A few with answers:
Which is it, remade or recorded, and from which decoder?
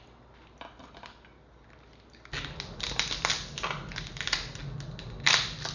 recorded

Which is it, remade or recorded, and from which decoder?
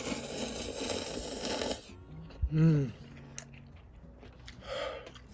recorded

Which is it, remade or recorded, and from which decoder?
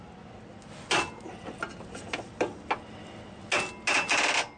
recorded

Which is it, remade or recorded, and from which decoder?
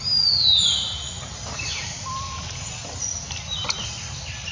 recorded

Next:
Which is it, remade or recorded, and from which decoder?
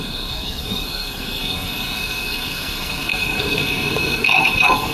remade, codec, SNAC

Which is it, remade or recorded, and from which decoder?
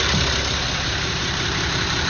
recorded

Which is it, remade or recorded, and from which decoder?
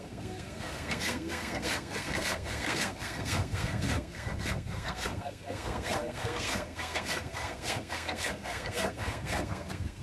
remade, codec, SNAC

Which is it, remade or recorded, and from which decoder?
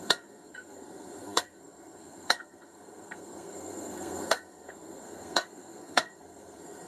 remade, codec, SNAC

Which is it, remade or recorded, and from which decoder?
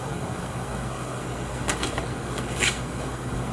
remade, codec, SNAC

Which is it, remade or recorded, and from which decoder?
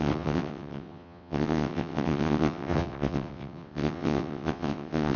remade, vocoder, WaveNeXt